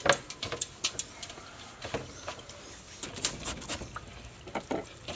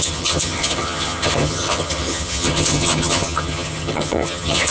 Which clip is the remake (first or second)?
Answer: second